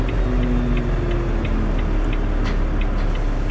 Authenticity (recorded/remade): recorded